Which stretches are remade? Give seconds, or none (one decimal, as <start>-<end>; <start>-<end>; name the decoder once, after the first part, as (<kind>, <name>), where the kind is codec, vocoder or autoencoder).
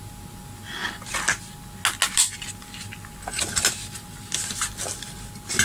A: none